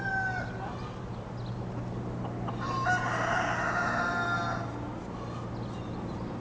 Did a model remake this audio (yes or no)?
no